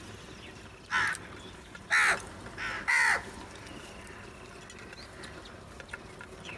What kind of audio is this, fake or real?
real